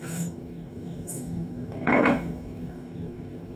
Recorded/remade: remade